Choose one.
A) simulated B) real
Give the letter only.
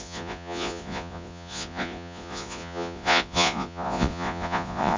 A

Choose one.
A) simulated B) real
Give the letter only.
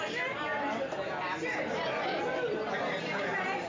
B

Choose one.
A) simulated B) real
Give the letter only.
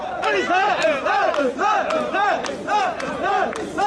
B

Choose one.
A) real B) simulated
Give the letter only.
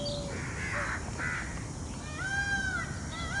A